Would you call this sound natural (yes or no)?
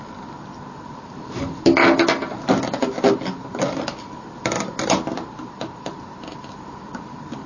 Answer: yes